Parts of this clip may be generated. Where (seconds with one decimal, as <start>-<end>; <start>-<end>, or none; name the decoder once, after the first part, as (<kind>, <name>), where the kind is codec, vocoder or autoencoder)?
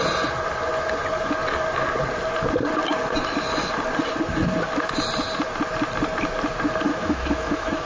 6.9-7.9 (autoencoder, DAC-VAE)